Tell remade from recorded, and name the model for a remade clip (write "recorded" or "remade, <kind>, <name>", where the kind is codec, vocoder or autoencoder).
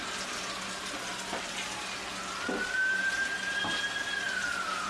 recorded